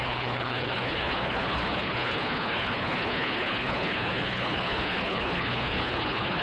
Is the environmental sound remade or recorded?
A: remade